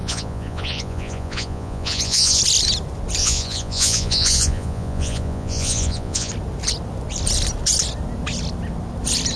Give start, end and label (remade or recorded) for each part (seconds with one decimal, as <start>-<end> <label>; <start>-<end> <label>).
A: 0.0-2.4 remade; 2.4-3.2 recorded; 3.2-6.3 remade; 6.3-9.4 recorded